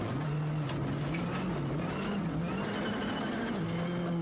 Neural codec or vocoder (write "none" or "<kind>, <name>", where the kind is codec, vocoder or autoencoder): none